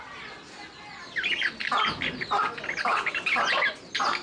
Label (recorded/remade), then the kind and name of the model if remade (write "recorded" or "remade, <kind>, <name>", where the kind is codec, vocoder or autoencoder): recorded